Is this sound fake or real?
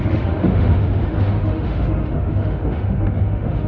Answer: fake